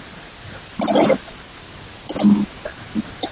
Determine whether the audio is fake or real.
real